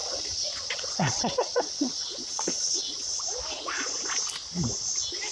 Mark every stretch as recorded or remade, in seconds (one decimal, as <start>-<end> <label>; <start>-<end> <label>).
0.0-3.2 remade; 3.2-5.3 recorded